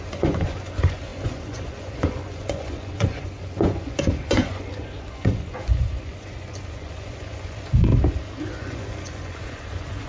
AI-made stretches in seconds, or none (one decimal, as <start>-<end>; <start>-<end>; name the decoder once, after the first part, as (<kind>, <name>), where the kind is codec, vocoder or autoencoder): 0.0-7.9 (vocoder, Vocos); 8.5-10.1